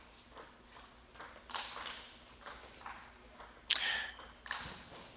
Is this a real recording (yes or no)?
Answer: yes